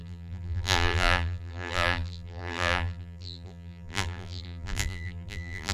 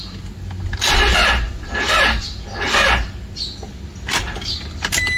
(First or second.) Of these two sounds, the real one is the second